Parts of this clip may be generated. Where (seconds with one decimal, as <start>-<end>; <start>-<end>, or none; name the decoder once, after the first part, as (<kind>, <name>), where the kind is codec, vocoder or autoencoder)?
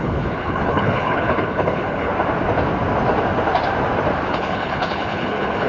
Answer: 0.0-2.1 (codec, HILCodec); 4.3-5.7